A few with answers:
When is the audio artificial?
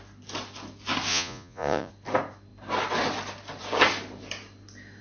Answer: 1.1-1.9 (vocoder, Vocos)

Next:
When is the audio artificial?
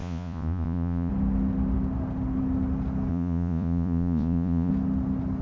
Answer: 0.0-1.1 (vocoder, Vocos); 3.1-4.7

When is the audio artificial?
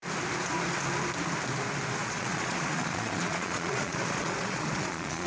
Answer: 2.0-5.3 (vocoder, Vocos)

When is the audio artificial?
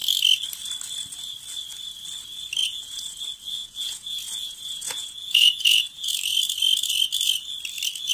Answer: 2.6-3.2 (vocoder, Vocos); 3.6-5.8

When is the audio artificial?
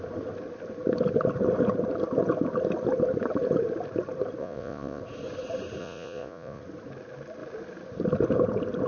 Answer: 4.4-5.0 (vocoder, Vocos); 5.8-6.6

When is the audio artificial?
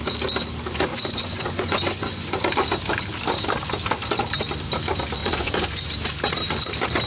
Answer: 0.9-2.4 (vocoder, Vocos); 5.2-5.9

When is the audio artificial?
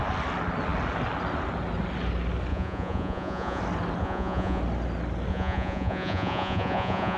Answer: 2.5-3.6 (vocoder, Vocos); 4.0-4.6; 5.3-7.2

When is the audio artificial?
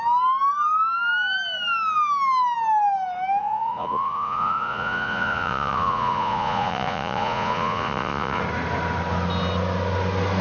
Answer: 3.4-8.4 (vocoder, Vocos)